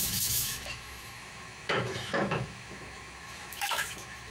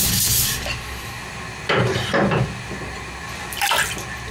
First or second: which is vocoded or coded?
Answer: first